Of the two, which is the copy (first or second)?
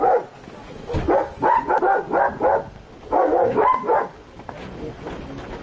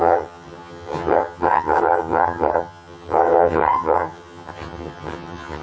second